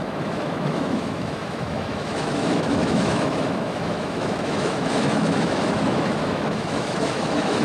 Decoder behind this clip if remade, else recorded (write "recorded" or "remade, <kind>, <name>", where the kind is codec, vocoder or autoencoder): remade, autoencoder, DAC-VAE